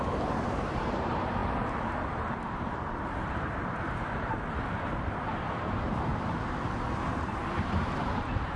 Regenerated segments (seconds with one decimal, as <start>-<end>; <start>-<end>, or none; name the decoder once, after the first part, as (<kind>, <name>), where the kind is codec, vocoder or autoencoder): 0.0-6.1 (vocoder, BigVGAN v2); 7.1-8.6